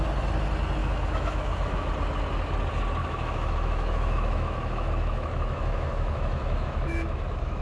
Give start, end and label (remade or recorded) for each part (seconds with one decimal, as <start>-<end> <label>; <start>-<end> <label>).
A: 0.0-0.8 recorded; 0.8-1.9 remade; 1.9-3.0 recorded; 3.0-7.6 remade